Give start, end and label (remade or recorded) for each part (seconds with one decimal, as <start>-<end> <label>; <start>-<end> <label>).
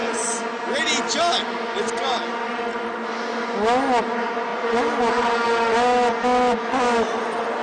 0.0-7.6 recorded